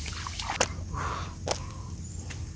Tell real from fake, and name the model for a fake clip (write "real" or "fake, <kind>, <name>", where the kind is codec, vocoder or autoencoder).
real